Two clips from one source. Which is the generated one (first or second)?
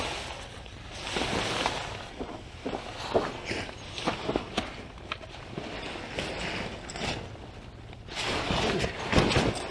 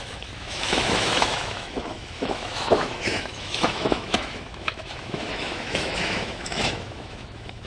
second